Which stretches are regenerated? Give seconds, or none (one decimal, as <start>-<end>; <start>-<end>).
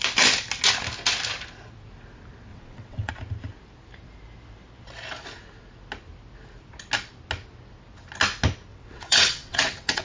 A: 2.5-3.1; 8.7-10.0